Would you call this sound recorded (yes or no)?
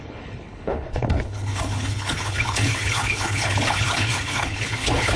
no